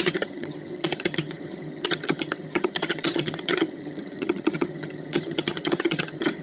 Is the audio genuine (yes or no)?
no